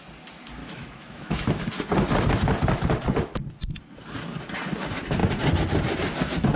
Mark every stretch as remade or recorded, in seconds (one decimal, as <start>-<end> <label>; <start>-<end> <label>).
0.0-0.6 recorded; 0.6-1.7 remade; 1.7-6.6 recorded